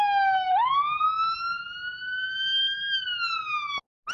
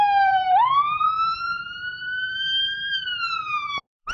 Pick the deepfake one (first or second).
second